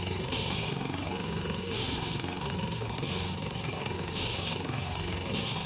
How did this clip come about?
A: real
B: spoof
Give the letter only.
B